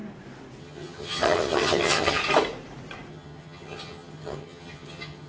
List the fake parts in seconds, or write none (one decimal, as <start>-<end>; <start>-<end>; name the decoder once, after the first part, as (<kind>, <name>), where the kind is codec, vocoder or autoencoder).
0.6-2.2 (vocoder, HiFi-GAN); 3.1-5.3